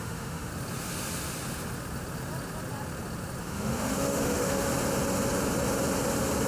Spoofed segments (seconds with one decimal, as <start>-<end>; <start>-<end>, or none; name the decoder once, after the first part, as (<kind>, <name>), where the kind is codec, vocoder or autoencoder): 0.0-0.5 (autoencoder, DAC-VAE); 3.4-4.7